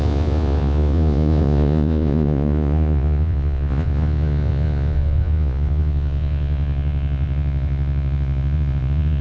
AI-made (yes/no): yes